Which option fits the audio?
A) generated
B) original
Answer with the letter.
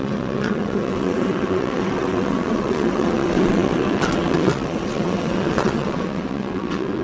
A